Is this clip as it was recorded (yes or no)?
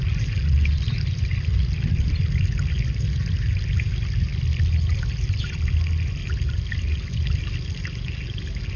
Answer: yes